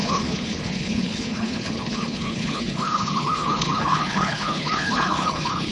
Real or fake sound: fake